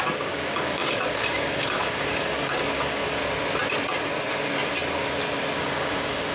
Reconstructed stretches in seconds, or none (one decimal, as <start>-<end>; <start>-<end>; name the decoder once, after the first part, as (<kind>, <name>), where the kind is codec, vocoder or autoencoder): 0.0-3.2 (codec, DAC); 5.6-6.3